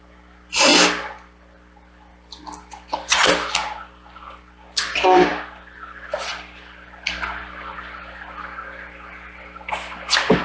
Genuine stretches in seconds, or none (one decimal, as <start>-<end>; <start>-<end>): 0.0-10.4